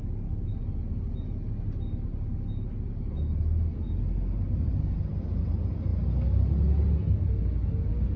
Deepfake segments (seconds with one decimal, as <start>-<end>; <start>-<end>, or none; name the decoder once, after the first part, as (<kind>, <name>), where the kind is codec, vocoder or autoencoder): none